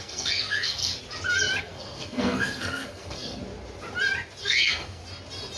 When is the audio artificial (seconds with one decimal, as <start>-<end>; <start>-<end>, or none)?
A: 0.0-0.9; 1.6-3.4; 4.4-5.0